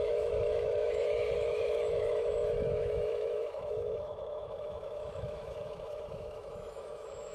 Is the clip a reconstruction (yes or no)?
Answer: yes